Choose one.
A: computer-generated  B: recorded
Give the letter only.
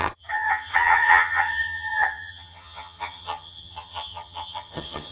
A